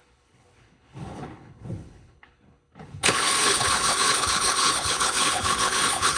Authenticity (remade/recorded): remade